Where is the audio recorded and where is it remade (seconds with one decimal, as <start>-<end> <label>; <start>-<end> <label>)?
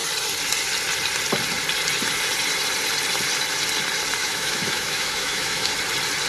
0.0-4.2 recorded; 4.2-5.7 remade; 5.7-6.3 recorded